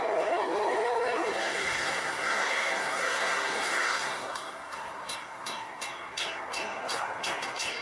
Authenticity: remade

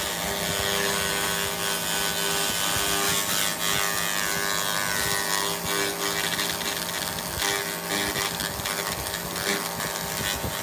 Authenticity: recorded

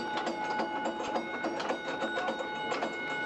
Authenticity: recorded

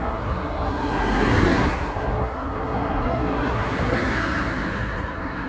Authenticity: remade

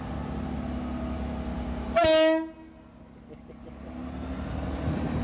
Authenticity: recorded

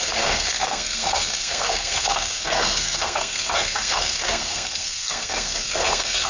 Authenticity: remade